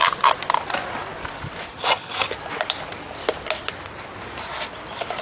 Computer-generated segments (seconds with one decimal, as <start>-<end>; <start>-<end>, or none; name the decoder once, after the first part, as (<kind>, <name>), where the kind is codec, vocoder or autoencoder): 1.7-2.3 (vocoder, HiFi-GAN)